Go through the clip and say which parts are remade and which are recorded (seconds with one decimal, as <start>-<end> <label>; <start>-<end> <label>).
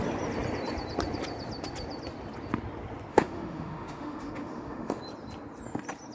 0.0-3.1 recorded; 3.1-5.0 remade; 5.0-6.1 recorded